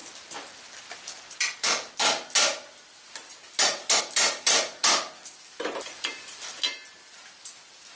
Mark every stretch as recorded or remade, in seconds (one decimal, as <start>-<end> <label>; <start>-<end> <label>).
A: 0.0-8.0 recorded